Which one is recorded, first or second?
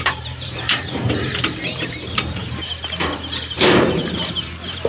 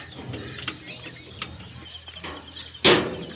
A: second